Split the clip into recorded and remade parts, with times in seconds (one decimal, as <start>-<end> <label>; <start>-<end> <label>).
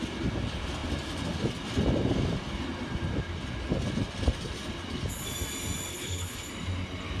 0.0-5.9 recorded; 5.9-6.5 remade; 6.5-7.2 recorded